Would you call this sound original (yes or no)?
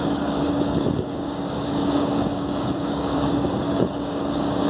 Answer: no